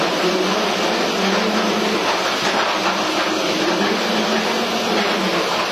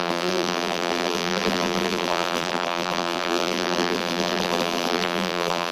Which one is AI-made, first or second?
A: second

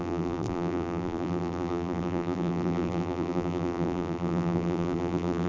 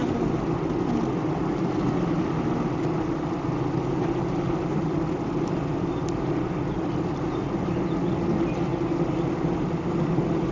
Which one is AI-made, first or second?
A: first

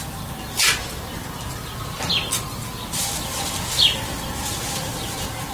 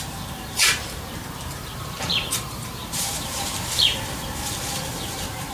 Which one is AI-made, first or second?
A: second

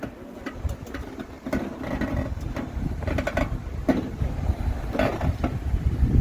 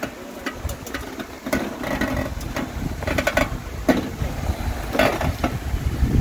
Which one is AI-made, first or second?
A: first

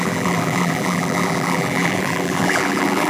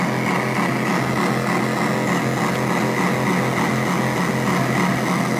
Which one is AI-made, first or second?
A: first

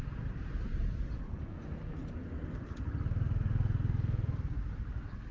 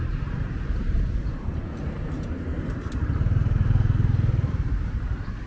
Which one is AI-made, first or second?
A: second